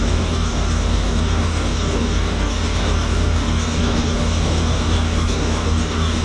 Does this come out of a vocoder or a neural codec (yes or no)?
yes